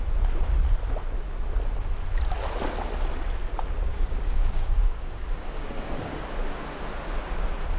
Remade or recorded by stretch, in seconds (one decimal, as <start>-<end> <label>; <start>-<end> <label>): 0.0-3.9 recorded; 3.9-6.3 remade; 6.3-7.8 recorded